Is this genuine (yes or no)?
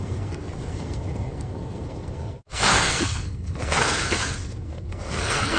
no